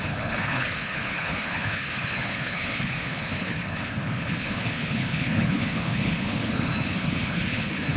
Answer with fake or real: fake